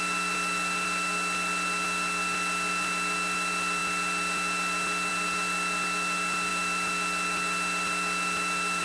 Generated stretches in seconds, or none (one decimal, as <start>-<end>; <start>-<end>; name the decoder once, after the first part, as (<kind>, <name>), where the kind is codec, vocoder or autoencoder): none